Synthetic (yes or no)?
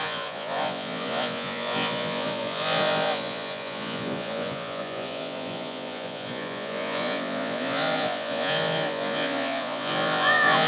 yes